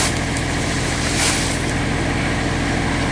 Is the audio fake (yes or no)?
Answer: no